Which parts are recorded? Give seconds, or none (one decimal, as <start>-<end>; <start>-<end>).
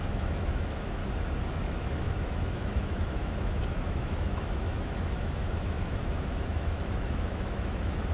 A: 1.0-1.6